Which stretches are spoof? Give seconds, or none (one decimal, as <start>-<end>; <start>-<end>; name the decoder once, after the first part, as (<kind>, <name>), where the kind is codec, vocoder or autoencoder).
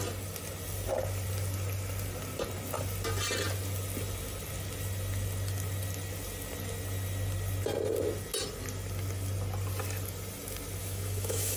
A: 10.8-11.6 (autoencoder, DAC-VAE)